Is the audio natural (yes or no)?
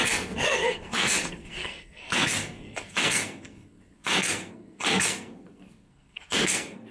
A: no